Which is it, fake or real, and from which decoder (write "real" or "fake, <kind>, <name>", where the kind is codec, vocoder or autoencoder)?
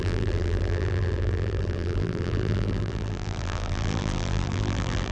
fake, vocoder, BigVGAN v2